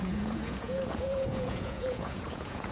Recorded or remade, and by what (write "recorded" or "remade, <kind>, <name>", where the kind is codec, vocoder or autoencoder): remade, vocoder, Vocos